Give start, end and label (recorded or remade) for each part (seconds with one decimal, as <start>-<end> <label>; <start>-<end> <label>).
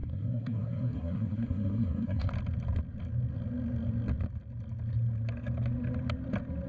0.0-2.3 remade; 2.3-6.7 recorded